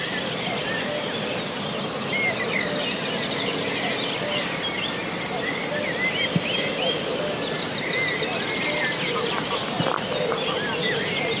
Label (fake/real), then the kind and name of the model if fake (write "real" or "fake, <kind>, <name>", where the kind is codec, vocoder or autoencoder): fake, vocoder, BigVGAN v2